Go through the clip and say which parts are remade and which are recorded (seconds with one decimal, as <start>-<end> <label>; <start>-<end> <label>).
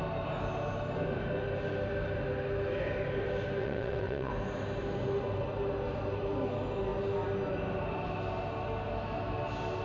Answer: 0.0-3.6 recorded; 3.6-4.3 remade; 4.3-9.8 recorded